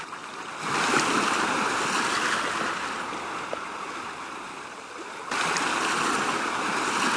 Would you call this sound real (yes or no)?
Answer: yes